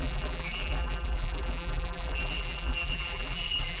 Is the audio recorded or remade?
remade